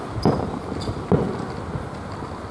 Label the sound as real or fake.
real